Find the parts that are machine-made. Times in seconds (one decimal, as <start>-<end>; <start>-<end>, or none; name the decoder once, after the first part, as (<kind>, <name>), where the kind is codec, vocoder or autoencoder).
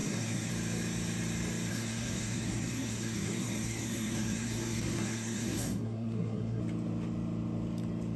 0.0-0.5 (codec, SNAC); 1.7-6.6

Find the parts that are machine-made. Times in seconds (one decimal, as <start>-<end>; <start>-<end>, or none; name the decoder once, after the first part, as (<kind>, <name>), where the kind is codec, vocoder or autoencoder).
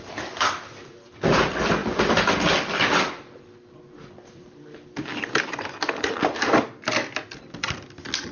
none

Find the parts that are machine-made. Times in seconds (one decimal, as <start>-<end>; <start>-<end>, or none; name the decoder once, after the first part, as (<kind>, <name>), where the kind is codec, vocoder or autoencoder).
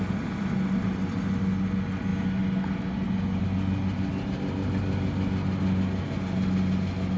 none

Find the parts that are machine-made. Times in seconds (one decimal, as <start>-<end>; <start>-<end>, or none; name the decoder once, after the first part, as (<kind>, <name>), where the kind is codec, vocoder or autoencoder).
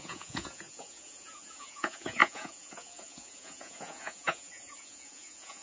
0.0-5.6 (vocoder, Vocos)